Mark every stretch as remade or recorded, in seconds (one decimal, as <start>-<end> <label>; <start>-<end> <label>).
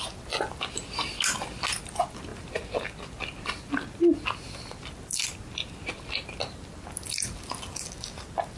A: 0.0-8.6 recorded